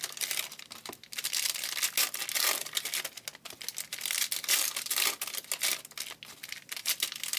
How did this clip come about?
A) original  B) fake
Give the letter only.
A